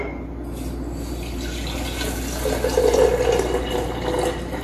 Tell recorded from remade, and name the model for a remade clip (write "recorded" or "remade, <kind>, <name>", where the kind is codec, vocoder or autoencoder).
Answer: recorded